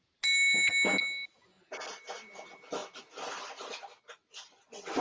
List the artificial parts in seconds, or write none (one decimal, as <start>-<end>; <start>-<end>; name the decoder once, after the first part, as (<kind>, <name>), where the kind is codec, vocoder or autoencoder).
none